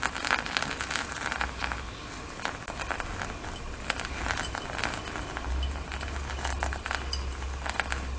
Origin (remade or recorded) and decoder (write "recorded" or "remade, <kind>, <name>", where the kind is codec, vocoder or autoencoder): recorded